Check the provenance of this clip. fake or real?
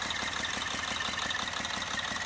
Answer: real